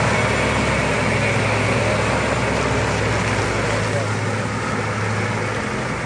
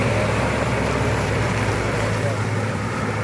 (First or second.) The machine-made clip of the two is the second